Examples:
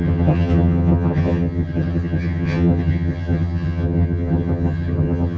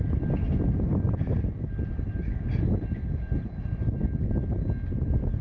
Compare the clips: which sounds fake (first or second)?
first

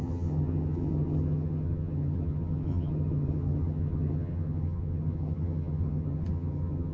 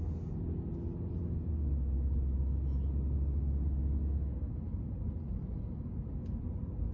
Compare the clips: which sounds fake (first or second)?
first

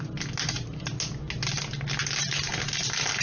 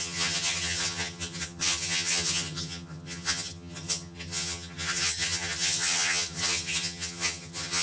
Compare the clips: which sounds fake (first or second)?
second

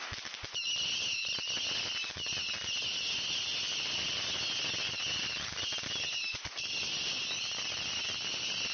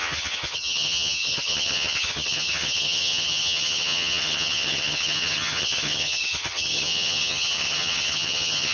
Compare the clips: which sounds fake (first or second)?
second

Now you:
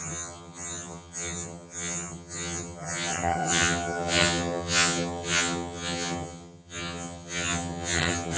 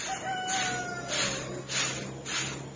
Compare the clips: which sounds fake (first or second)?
first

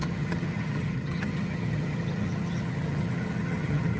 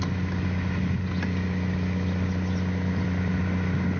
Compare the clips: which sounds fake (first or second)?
first